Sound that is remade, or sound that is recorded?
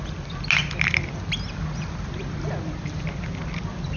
recorded